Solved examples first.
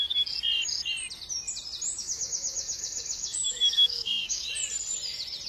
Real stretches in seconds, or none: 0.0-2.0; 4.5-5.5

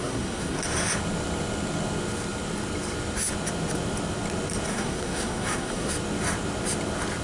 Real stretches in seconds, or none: 0.6-4.7; 5.9-7.2

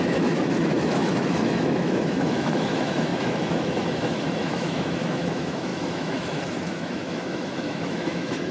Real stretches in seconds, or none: none

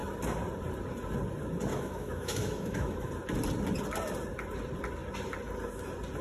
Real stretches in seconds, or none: 0.0-1.7; 3.1-6.2